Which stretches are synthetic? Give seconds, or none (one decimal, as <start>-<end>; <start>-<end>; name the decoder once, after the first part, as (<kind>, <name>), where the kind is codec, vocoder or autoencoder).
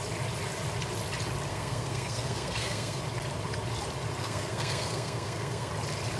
1.5-3.0 (codec, SNAC); 4.2-5.7